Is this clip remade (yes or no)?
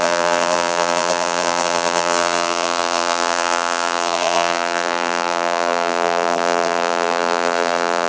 yes